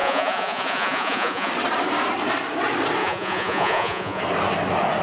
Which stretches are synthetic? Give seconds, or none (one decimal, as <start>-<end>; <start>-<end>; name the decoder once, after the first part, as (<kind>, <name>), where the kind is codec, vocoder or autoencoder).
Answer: 0.0-1.5 (vocoder, Vocos); 3.0-4.2